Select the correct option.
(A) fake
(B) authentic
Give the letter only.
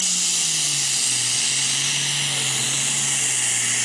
B